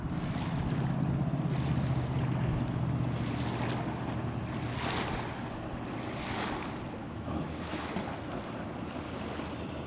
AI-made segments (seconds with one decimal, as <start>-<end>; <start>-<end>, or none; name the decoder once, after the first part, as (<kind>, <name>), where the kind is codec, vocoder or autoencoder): 7.0-7.9 (autoencoder, DAC-VAE)